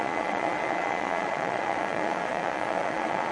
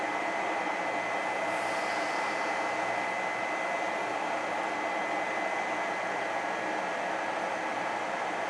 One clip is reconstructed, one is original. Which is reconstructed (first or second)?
first